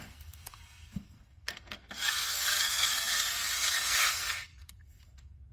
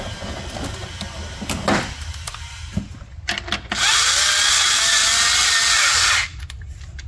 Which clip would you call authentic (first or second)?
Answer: second